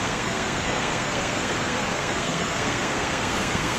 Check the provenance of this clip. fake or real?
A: fake